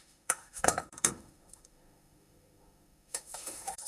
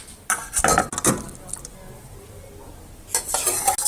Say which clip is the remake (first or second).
first